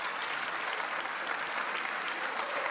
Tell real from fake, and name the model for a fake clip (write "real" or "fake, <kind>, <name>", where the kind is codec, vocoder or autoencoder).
real